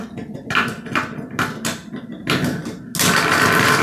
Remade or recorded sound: recorded